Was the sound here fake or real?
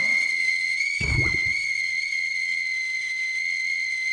fake